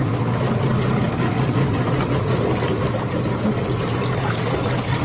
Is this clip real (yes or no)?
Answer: yes